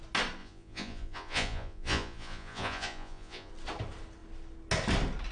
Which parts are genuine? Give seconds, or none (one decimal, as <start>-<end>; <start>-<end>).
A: 0.0-0.4; 3.5-5.3